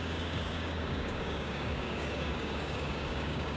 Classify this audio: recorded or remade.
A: remade